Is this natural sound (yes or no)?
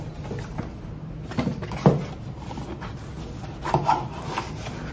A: yes